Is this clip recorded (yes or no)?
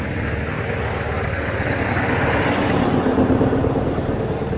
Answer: yes